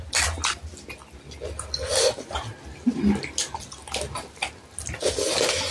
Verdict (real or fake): real